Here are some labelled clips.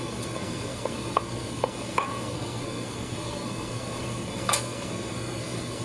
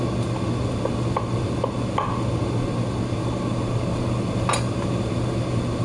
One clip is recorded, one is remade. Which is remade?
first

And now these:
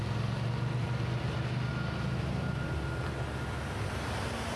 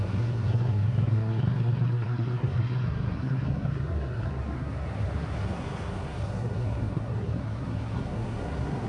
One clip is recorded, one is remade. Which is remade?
second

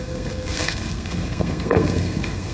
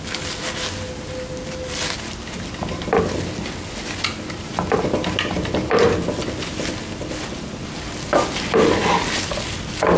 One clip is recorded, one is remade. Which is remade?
first